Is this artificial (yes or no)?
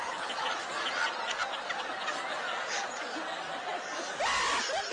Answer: no